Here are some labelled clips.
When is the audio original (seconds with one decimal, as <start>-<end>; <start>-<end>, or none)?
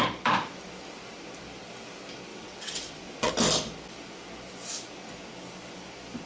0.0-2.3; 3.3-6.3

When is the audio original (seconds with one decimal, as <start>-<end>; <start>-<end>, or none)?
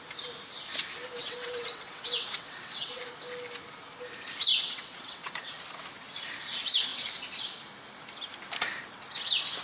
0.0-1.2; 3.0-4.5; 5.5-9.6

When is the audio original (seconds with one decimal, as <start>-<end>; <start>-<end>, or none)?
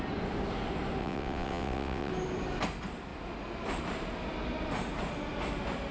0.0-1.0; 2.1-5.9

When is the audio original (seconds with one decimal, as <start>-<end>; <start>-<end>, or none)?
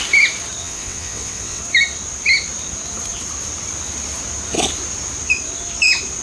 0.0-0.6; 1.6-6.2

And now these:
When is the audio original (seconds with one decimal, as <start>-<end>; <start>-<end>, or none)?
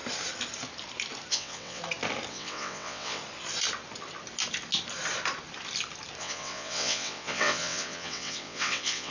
0.0-1.3; 1.8-2.3; 3.2-6.2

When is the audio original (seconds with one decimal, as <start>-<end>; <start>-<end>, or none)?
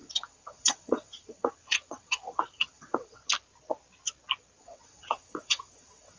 3.2-4.6